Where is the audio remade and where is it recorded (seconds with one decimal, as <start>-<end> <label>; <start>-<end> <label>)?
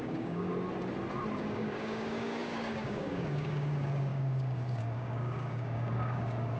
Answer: 0.0-0.5 remade; 0.5-1.4 recorded; 1.4-6.6 remade